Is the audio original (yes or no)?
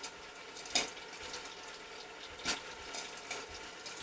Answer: yes